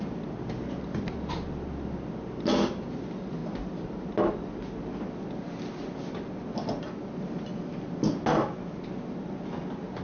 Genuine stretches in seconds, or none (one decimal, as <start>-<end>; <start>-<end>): 0.0-10.0